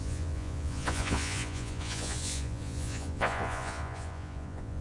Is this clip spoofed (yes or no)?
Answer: yes